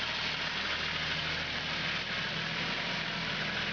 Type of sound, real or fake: real